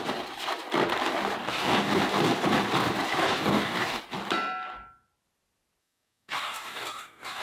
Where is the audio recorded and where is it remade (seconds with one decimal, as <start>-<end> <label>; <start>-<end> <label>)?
0.0-1.4 recorded; 1.4-2.0 remade; 2.0-3.2 recorded; 3.2-4.0 remade; 4.0-5.8 recorded; 5.8-7.4 remade